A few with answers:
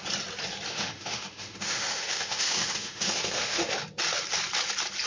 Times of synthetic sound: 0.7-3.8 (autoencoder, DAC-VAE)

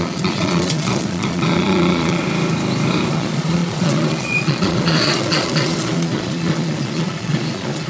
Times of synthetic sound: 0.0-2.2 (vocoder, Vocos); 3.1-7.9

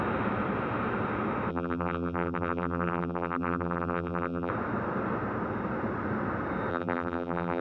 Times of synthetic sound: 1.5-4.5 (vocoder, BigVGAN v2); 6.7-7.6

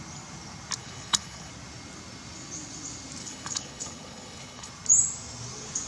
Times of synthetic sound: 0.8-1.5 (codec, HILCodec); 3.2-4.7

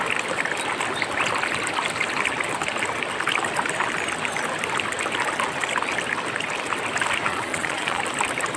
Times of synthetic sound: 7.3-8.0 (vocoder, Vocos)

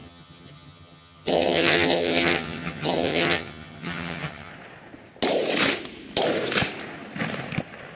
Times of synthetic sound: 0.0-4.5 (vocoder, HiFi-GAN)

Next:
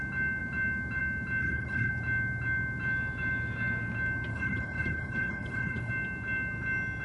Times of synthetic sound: 1.4-1.9 (codec, HILCodec); 4.3-5.9

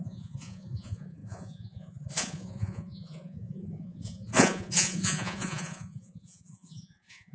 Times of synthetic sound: 0.0-7.3 (vocoder, Vocos)